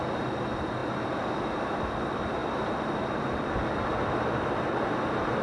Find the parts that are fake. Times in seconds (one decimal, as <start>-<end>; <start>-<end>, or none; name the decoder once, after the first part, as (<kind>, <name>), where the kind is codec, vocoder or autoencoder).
0.0-5.4 (vocoder, BigVGAN v2)